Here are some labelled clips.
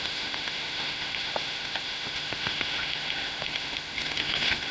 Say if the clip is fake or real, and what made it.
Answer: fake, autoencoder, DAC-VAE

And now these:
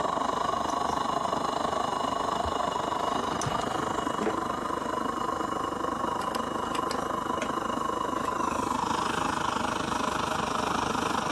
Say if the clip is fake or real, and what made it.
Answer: real